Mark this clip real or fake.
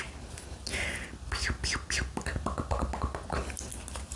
real